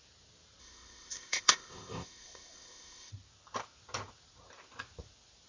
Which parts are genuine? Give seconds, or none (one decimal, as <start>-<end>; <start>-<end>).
0.0-0.6; 3.1-5.5